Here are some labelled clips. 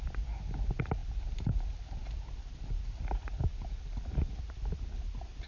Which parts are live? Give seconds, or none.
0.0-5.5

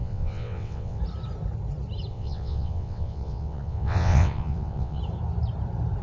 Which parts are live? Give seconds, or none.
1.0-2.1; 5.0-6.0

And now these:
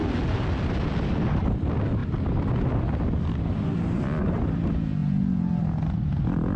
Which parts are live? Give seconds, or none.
0.0-6.6

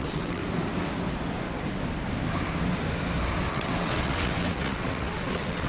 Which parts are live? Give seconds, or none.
0.4-3.5